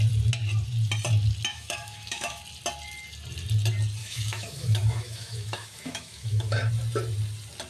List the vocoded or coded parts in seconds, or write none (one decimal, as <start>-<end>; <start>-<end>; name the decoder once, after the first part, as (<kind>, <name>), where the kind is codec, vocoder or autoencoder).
1.5-2.4 (autoencoder, DAC-VAE); 4.0-6.7